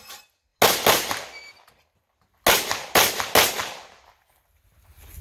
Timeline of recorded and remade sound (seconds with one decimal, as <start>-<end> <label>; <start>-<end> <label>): 0.0-5.2 recorded